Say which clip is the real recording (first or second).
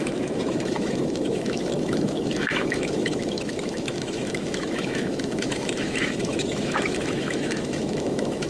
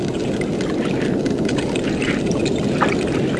second